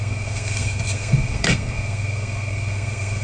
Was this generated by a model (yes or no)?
yes